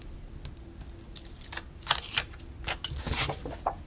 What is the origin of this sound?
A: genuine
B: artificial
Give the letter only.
A